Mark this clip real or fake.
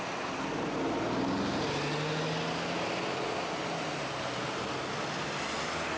real